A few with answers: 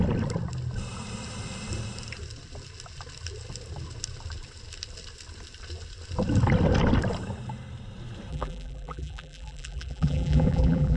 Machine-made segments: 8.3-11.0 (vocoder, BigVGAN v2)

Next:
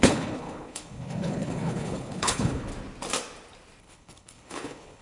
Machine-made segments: 0.0-2.7 (codec, HILCodec); 3.8-5.0

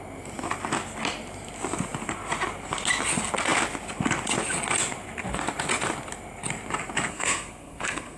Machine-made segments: 7.1-8.2 (codec, SNAC)

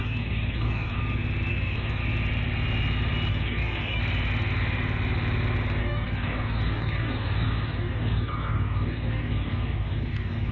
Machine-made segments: 0.0-1.0 (codec, DAC); 1.5-2.0; 3.3-4.0; 5.8-10.5

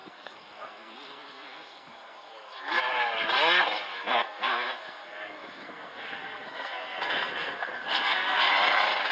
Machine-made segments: 0.0-2.8 (codec, SNAC); 3.9-8.5

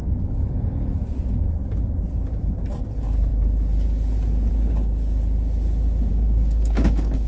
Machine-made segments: 6.1-7.3 (codec, DAC)